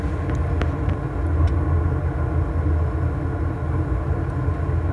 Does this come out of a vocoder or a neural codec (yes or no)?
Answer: no